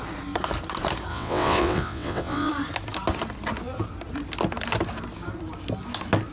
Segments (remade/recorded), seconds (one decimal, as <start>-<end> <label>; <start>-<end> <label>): 0.0-1.1 recorded; 1.1-2.5 remade; 2.5-6.3 recorded

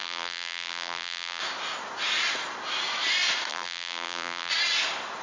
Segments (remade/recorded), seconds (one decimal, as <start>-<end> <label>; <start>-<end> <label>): 0.0-1.4 remade; 1.4-3.5 recorded; 3.5-4.5 remade; 4.5-5.2 recorded

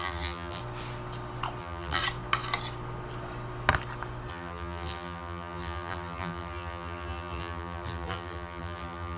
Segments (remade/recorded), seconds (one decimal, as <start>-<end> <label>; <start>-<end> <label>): 0.0-0.6 remade; 0.6-1.6 recorded; 1.6-2.0 remade; 2.0-4.3 recorded; 4.3-9.2 remade

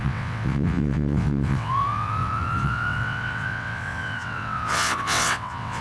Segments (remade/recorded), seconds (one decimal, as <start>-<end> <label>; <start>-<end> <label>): 0.0-5.8 remade

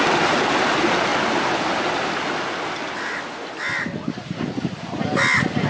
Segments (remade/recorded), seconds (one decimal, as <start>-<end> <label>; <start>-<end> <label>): 0.0-5.7 recorded

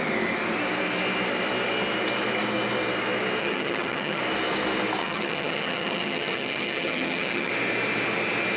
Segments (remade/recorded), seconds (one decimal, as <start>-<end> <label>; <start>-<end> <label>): 0.0-3.4 recorded; 3.4-4.2 remade; 4.2-5.0 recorded; 5.0-7.5 remade; 7.5-8.6 recorded

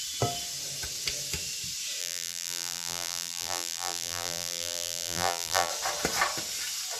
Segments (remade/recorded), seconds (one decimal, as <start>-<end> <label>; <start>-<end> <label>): 0.0-2.0 recorded; 2.0-5.7 remade; 5.7-7.0 recorded